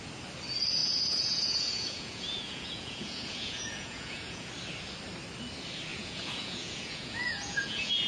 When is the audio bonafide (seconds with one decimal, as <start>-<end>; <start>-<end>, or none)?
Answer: 0.0-0.8; 4.5-5.9